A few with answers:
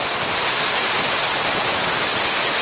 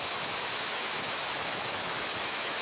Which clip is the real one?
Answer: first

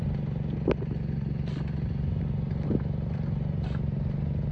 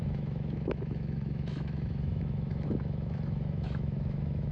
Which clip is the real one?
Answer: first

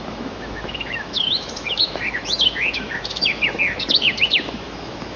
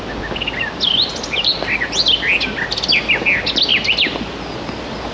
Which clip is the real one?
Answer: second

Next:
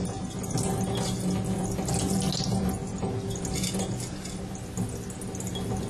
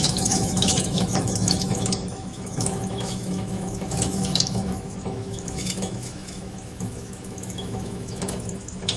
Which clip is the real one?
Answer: first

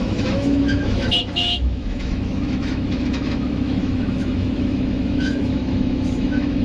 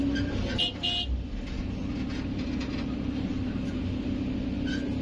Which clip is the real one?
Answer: second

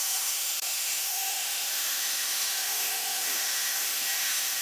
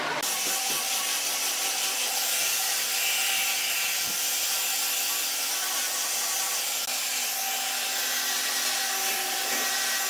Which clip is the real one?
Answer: second